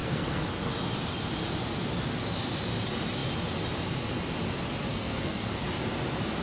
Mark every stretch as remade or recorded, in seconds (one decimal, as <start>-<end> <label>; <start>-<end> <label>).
0.0-0.7 remade; 0.7-4.9 recorded; 4.9-5.5 remade; 5.5-6.4 recorded